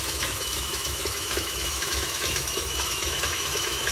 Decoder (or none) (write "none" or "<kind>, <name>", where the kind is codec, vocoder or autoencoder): autoencoder, DAC-VAE